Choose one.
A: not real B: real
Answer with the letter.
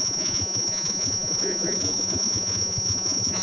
A